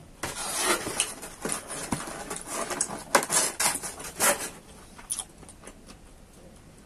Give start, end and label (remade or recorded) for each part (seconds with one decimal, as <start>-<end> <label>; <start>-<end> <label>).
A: 0.0-6.9 recorded